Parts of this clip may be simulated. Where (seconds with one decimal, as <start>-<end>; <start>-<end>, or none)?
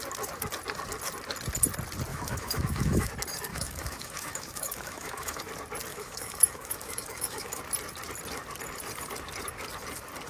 2.1-3.1; 3.5-5.4; 5.9-7.6